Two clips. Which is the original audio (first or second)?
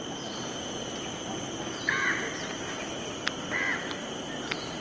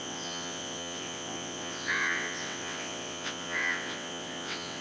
first